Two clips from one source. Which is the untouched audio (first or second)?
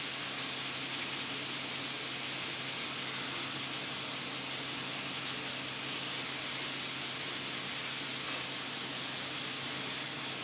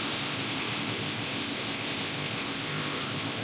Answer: first